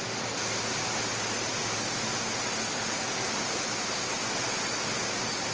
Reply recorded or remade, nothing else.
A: recorded